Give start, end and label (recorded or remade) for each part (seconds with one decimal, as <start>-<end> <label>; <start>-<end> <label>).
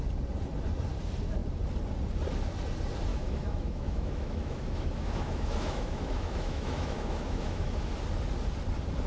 0.0-3.1 recorded; 3.1-8.0 remade; 8.0-9.1 recorded